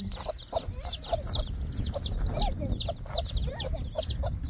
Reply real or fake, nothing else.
real